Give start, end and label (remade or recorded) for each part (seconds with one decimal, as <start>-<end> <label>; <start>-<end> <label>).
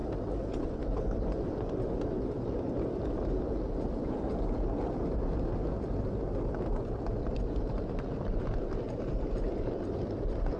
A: 0.0-10.6 recorded